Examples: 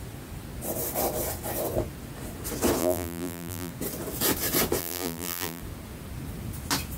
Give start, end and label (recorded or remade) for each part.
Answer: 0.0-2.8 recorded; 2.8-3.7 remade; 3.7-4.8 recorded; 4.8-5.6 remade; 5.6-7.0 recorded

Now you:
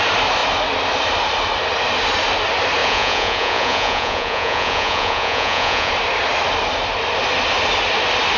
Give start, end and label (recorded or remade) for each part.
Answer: 0.0-2.8 recorded; 2.8-5.9 remade; 5.9-8.4 recorded

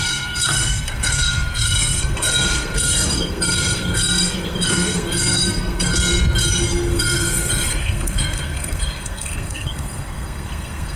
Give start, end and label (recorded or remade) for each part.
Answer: 0.0-5.9 remade; 5.9-6.5 recorded; 6.5-11.0 remade